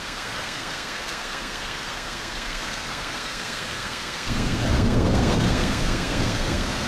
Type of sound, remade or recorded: remade